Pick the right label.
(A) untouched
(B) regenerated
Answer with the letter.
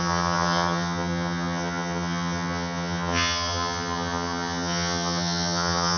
B